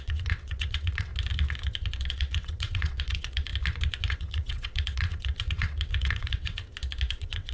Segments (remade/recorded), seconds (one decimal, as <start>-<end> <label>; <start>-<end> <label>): 0.0-1.1 remade; 1.1-2.1 recorded; 2.1-3.5 remade; 3.5-4.1 recorded; 4.1-6.6 remade; 6.6-7.1 recorded; 7.1-7.5 remade